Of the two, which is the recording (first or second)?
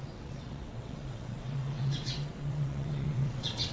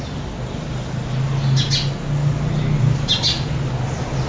second